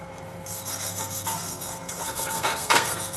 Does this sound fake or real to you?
fake